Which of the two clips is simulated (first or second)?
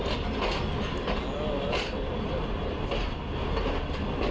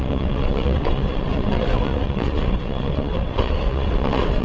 second